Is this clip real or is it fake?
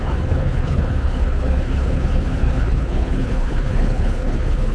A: fake